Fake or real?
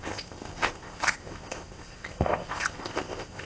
fake